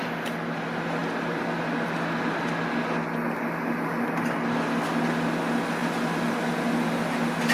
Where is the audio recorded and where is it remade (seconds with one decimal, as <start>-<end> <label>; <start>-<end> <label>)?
0.0-7.5 recorded